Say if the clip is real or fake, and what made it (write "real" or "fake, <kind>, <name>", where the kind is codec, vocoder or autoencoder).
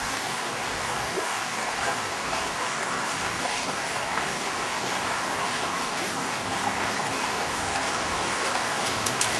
fake, codec, DAC